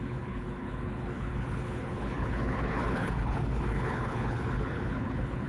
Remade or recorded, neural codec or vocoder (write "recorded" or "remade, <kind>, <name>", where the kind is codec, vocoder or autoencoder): remade, codec, HILCodec